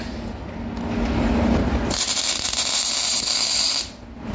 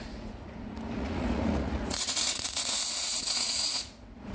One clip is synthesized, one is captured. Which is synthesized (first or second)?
second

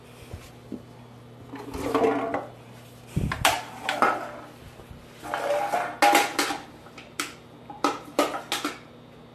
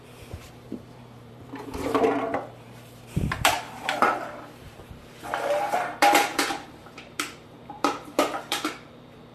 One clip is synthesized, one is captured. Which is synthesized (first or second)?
second